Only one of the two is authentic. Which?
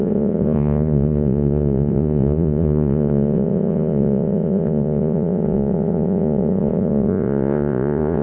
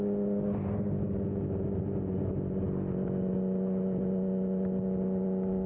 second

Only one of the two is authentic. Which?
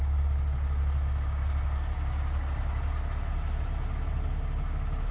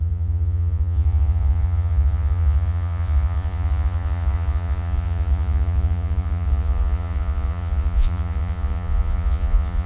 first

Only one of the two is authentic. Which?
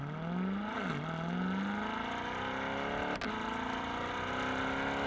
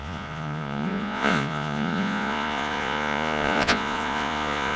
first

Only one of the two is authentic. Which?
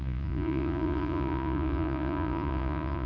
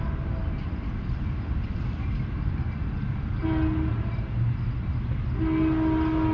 second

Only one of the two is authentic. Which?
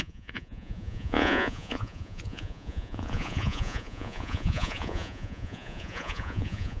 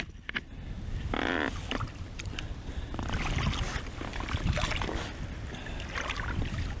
second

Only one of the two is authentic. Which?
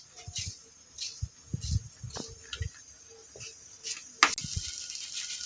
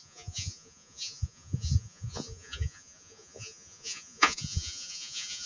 first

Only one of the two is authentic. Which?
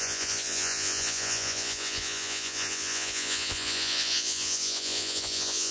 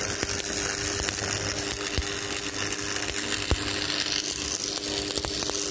second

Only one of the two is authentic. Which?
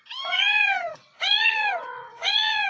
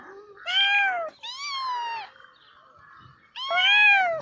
second